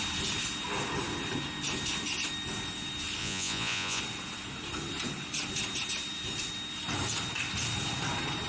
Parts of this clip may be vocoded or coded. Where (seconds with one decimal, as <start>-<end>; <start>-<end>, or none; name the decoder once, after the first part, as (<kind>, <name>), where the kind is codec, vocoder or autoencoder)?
3.2-4.0 (vocoder, Vocos)